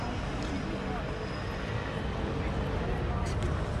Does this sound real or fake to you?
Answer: real